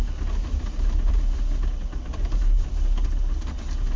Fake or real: real